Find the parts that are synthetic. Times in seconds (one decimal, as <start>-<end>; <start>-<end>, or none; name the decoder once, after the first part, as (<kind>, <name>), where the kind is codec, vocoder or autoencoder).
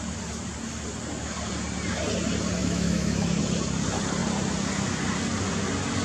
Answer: 2.6-3.4 (autoencoder, DAC-VAE)